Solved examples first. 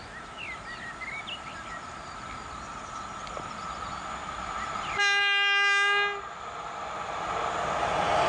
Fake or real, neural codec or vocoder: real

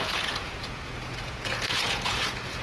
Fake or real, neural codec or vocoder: fake, vocoder, Vocos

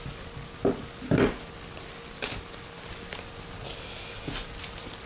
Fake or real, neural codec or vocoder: real